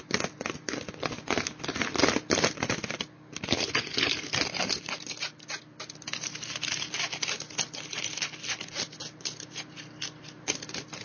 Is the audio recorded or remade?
recorded